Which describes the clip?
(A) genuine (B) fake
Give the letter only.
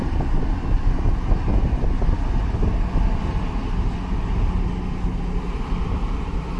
A